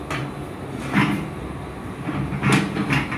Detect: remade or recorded recorded